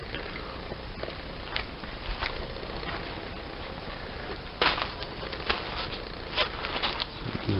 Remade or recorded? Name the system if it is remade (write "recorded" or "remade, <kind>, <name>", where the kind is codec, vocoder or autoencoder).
recorded